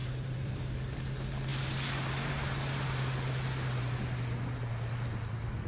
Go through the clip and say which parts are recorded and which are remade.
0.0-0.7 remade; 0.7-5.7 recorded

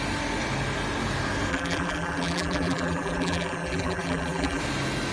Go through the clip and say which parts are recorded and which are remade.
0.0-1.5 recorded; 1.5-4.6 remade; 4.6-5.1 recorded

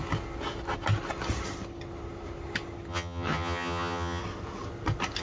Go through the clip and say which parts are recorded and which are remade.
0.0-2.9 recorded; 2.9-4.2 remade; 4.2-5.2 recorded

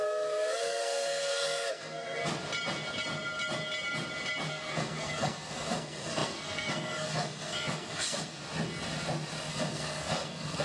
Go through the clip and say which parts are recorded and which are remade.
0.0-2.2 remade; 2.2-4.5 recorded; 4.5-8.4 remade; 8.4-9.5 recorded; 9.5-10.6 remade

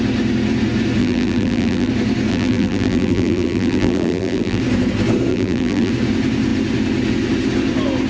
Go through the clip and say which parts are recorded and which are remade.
0.0-1.0 recorded; 1.0-1.9 remade; 1.9-2.3 recorded; 2.3-4.6 remade; 4.6-5.3 recorded; 5.3-5.9 remade; 5.9-8.1 recorded

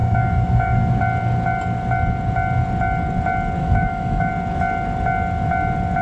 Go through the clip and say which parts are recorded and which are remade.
0.0-0.9 remade; 0.9-3.6 recorded; 3.6-4.3 remade; 4.3-6.0 recorded

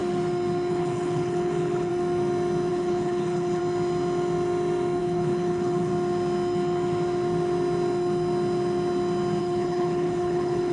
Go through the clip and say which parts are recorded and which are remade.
0.0-0.7 recorded; 0.7-1.9 remade; 1.9-2.7 recorded; 2.7-3.6 remade; 3.6-5.0 recorded; 5.0-5.9 remade; 5.9-9.4 recorded; 9.4-10.7 remade